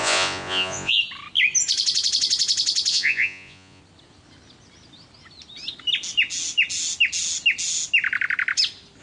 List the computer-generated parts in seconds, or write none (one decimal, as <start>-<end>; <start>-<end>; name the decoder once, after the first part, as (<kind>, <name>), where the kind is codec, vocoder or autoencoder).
0.0-1.0 (vocoder, Vocos); 2.9-3.8